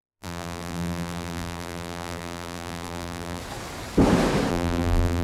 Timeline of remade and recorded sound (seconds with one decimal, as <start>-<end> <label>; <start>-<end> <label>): 0.0-3.4 remade; 3.4-4.5 recorded; 4.5-5.2 remade